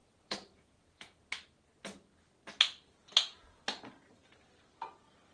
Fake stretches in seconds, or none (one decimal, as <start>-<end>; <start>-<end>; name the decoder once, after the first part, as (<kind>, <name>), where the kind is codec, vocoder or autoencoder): 0.0-1.3 (vocoder, Vocos); 3.0-3.6